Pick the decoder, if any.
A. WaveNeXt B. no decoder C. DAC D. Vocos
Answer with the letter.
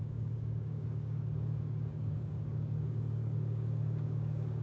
C